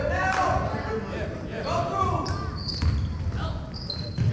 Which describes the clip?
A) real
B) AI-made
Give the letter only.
A